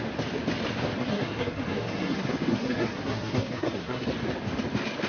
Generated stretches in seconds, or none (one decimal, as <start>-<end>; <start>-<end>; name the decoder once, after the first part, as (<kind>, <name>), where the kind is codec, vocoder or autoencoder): 1.0-4.1 (codec, SNAC)